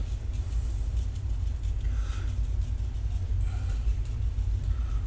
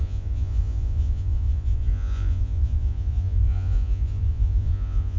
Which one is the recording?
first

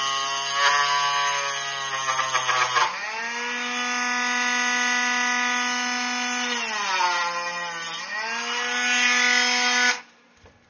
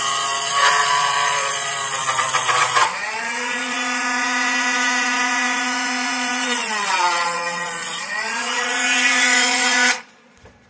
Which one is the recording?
first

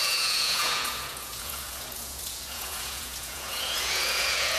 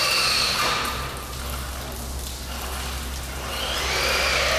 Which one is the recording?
second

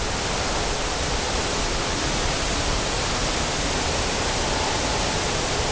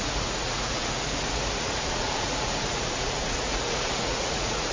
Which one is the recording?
first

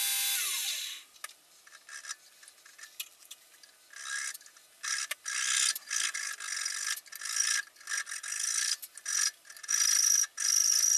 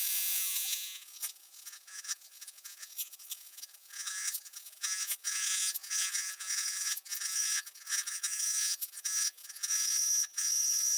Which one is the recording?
first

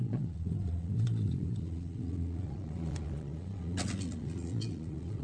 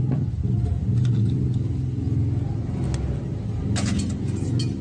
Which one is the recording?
second